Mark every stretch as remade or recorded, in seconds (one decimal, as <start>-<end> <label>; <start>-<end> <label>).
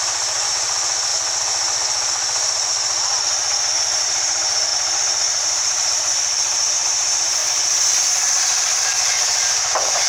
0.0-1.1 remade; 1.1-4.0 recorded; 4.0-4.7 remade; 4.7-5.4 recorded; 5.4-7.4 remade; 7.4-8.0 recorded; 8.0-10.1 remade